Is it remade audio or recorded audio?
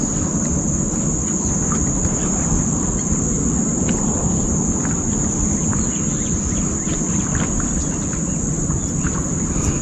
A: recorded